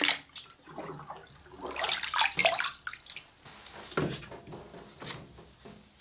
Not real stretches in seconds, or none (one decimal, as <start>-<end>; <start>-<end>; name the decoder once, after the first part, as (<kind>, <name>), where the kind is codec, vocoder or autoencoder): none